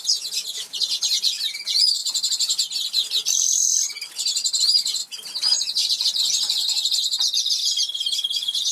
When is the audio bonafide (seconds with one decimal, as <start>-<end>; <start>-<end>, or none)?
0.0-8.7